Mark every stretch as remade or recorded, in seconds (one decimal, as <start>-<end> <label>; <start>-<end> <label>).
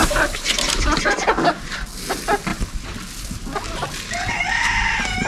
0.0-0.7 remade; 0.7-5.3 recorded